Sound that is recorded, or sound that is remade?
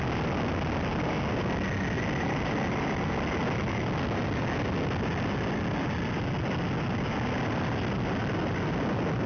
recorded